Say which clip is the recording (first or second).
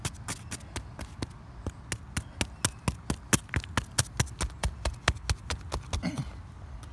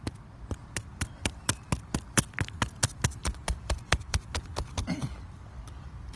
first